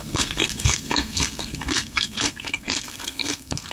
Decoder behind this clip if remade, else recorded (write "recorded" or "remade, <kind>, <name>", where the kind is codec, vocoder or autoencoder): remade, codec, SNAC